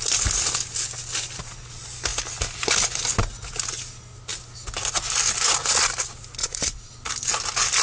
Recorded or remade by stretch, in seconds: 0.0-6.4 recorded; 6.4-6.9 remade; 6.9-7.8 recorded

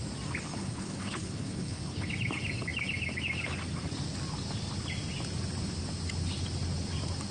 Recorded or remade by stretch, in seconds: 0.0-0.6 recorded; 0.6-2.1 remade; 2.1-7.3 recorded

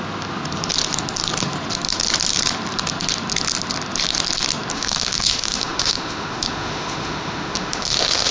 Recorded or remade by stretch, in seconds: 0.0-4.7 recorded; 4.7-8.3 remade

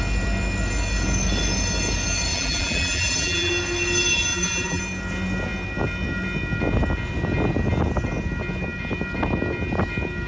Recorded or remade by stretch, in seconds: 0.0-2.3 recorded; 2.3-3.5 remade; 3.5-4.3 recorded; 4.3-4.8 remade; 4.8-10.3 recorded

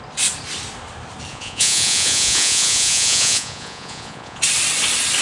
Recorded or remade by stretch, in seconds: 0.0-1.3 recorded; 1.3-4.4 remade; 4.4-5.2 recorded

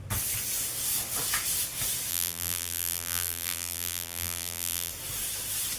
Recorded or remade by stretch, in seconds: 0.0-2.1 recorded; 2.1-4.9 remade; 4.9-5.8 recorded

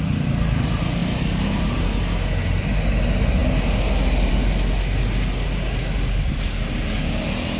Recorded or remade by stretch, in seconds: 0.0-7.6 recorded

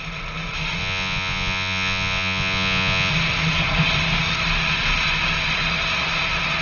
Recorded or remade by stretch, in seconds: 0.0-0.8 recorded; 0.8-3.1 remade; 3.1-6.6 recorded